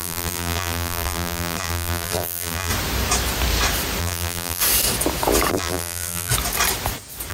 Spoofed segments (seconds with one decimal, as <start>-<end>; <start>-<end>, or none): 0.0-2.7; 4.0-4.6; 5.5-6.3